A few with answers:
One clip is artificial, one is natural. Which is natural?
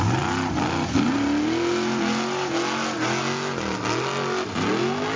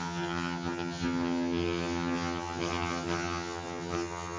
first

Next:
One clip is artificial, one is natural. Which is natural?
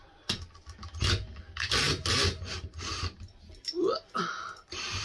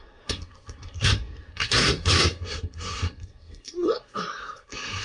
first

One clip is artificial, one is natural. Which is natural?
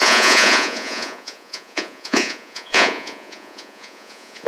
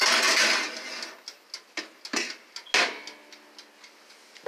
second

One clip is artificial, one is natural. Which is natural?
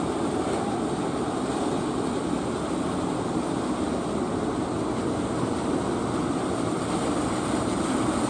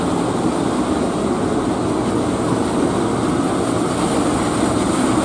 second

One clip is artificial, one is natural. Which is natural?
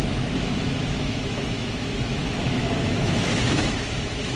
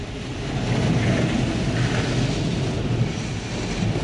second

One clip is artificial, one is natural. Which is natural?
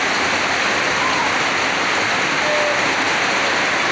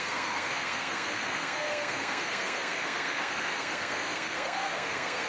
first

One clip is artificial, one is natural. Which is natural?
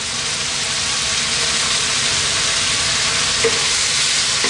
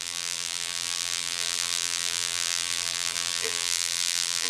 first